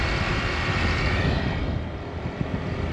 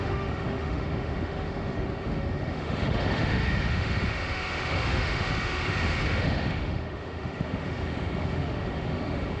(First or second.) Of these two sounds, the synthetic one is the second